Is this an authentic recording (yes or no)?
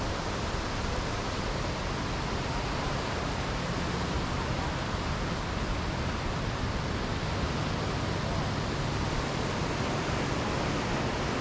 yes